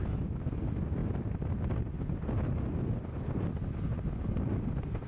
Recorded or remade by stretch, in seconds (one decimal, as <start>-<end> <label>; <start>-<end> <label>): 0.0-5.1 recorded

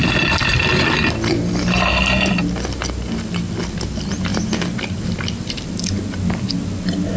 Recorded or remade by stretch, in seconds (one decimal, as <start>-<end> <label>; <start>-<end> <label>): 0.0-7.2 recorded

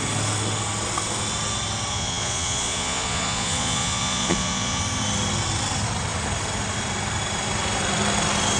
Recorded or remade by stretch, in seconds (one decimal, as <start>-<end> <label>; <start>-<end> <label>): 0.0-1.9 recorded; 1.9-4.8 remade; 4.8-8.6 recorded

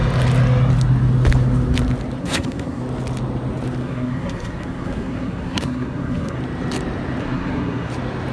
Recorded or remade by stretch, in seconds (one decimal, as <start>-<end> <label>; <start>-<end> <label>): 0.0-2.2 recorded; 2.2-2.8 remade; 2.8-3.8 recorded; 3.8-6.4 remade; 6.4-7.2 recorded; 7.2-7.9 remade; 7.9-8.3 recorded

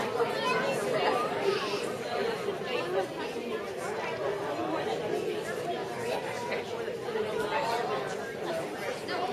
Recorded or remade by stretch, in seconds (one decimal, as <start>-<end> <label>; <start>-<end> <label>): 0.0-9.3 recorded

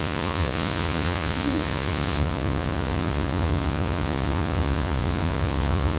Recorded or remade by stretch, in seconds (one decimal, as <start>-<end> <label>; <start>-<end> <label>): 0.0-6.0 remade

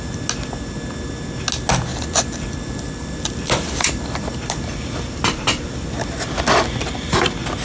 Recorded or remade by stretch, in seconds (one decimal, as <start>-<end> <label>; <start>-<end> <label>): 0.0-1.9 recorded; 1.9-4.5 remade; 4.5-7.6 recorded

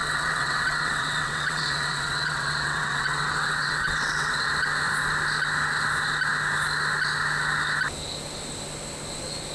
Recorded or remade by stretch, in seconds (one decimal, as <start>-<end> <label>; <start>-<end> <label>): 0.0-4.5 remade; 4.5-9.5 recorded